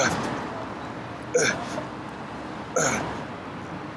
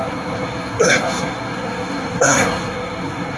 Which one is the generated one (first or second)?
second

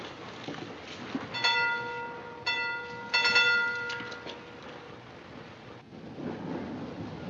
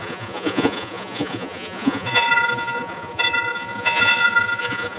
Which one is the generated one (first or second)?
second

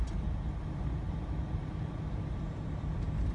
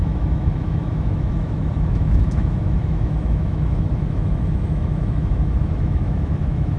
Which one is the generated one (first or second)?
second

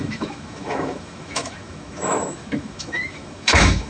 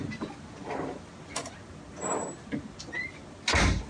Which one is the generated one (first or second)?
first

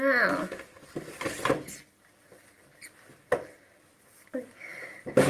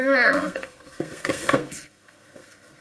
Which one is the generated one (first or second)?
second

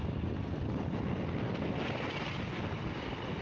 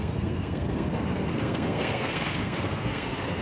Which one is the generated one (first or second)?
second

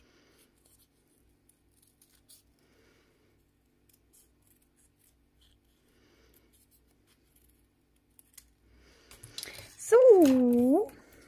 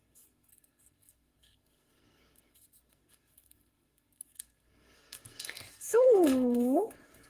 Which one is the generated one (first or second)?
second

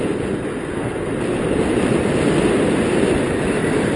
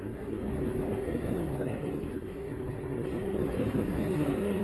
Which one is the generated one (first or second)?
second